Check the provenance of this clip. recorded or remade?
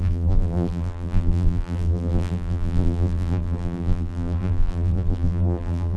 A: remade